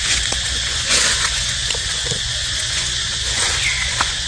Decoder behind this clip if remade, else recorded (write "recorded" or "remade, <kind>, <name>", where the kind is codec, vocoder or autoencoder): remade, vocoder, Vocos